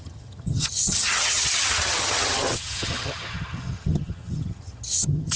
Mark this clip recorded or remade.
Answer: remade